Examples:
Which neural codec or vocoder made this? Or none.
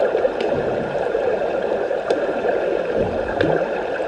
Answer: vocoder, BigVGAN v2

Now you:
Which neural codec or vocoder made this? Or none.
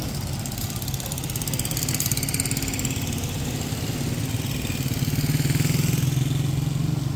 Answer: none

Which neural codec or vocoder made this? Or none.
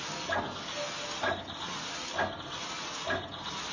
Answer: none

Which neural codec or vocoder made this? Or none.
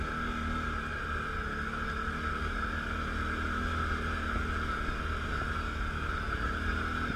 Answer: none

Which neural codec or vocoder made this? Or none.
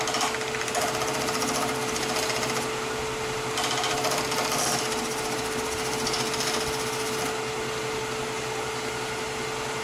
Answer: none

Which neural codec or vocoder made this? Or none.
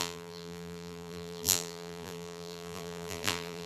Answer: vocoder, BigVGAN v2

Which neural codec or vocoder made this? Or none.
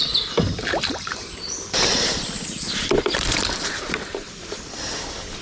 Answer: vocoder, BigVGAN v2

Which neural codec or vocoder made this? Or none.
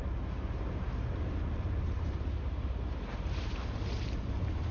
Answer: vocoder, BigVGAN v2